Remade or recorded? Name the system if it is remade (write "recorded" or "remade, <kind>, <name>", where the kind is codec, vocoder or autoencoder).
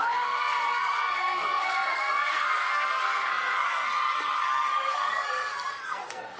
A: remade, codec, SNAC